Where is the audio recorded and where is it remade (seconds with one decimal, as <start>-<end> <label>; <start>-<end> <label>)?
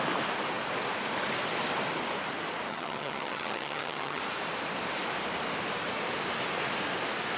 0.0-2.7 recorded; 2.7-4.2 remade; 4.2-7.4 recorded